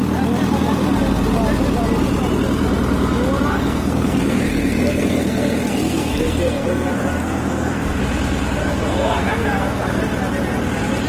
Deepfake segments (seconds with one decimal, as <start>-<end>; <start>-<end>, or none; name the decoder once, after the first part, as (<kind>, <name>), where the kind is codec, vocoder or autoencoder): 3.5-8.0 (codec, SNAC); 8.6-10.0